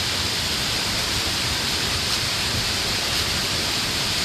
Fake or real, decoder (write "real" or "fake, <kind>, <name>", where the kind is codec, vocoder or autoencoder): real